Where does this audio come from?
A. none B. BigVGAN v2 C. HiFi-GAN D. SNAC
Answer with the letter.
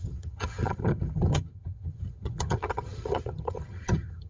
C